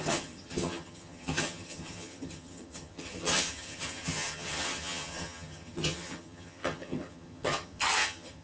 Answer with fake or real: fake